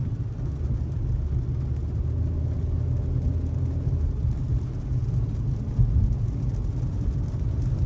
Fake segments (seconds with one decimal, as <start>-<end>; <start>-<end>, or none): none